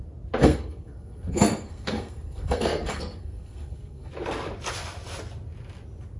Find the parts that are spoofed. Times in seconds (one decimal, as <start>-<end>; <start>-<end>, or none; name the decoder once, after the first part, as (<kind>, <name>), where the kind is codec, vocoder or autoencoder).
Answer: 0.4-4.1 (codec, SNAC)